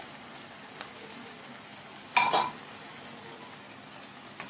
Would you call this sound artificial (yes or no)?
no